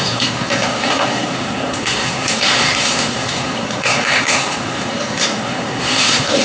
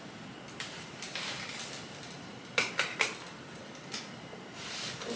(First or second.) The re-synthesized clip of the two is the first